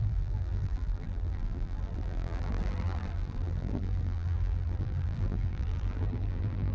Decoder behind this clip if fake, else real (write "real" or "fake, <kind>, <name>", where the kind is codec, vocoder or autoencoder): fake, vocoder, BigVGAN v2